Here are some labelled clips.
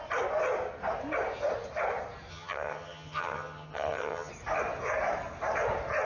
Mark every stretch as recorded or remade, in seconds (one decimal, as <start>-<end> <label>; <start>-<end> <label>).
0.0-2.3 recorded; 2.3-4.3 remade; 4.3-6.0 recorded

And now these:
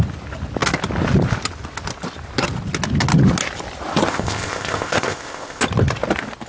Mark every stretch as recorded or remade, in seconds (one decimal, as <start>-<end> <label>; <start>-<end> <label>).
0.0-4.1 recorded; 4.1-5.6 remade; 5.6-6.5 recorded

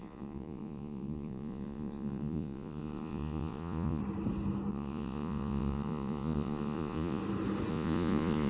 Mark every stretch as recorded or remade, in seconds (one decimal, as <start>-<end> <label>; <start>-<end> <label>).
0.0-4.0 remade; 4.0-4.7 recorded; 4.7-7.2 remade; 7.2-7.7 recorded; 7.7-8.5 remade

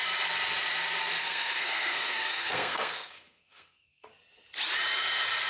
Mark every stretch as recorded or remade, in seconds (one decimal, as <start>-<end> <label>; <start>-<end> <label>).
0.0-1.2 recorded; 1.2-4.1 remade; 4.1-5.5 recorded